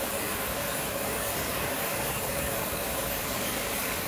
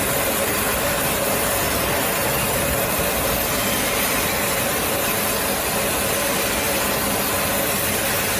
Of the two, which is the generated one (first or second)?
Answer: first